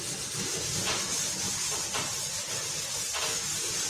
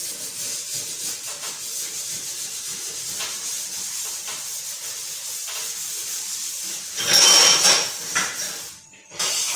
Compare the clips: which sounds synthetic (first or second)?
first